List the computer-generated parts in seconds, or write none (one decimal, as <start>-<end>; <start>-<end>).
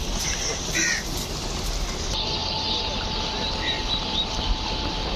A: none